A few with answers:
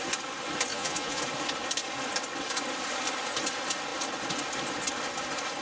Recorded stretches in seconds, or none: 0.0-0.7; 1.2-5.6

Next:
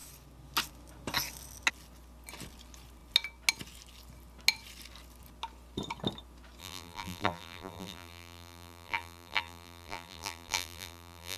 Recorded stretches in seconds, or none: 0.0-6.6

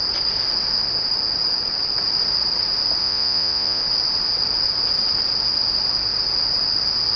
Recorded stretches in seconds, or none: 0.0-3.0; 3.8-7.2

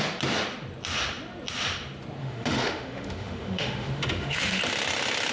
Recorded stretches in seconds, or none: 0.0-2.2; 4.6-5.3

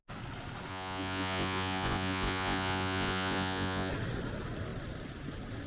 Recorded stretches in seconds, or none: 0.0-0.7; 3.9-5.7

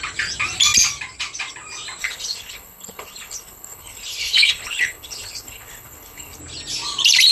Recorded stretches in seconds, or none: 0.0-2.0; 6.4-7.3